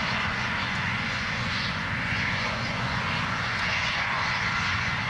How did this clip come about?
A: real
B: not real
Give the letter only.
B